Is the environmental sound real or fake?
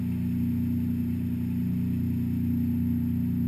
real